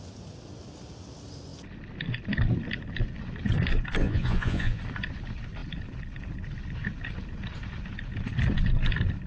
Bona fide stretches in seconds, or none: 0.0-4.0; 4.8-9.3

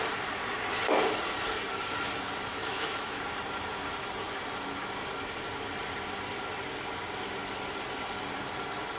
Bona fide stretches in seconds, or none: 0.0-2.5; 3.2-9.0

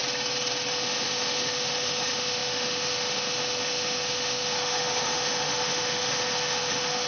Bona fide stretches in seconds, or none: 0.0-0.7

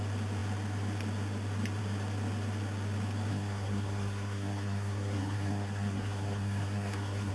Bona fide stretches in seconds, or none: 0.0-3.3